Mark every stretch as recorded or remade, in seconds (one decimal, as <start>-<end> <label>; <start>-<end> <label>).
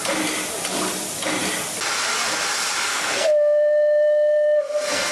0.0-2.9 recorded; 2.9-5.1 remade